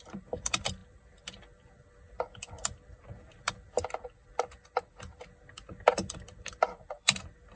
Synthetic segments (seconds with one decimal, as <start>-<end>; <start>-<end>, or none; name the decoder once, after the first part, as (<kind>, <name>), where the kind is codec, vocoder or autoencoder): 0.0-7.6 (vocoder, BigVGAN v2)